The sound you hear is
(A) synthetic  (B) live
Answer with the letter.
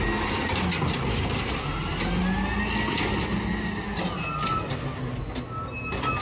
B